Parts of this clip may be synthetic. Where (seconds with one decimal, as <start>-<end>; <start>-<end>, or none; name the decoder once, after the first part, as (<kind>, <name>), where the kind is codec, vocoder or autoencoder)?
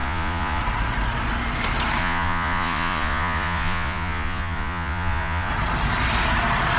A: 0.0-0.6 (vocoder, Vocos); 2.0-5.5